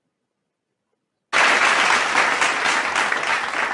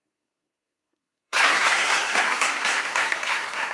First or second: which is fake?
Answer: second